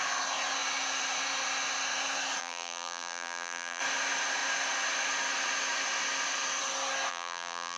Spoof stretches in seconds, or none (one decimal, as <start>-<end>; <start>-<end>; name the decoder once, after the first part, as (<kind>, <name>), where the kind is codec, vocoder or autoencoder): 2.4-3.8 (vocoder, BigVGAN v2); 7.1-7.8